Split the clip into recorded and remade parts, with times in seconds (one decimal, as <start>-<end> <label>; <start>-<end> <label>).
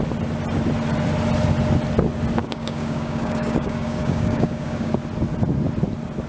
0.0-2.4 recorded; 2.4-4.9 remade; 4.9-6.3 recorded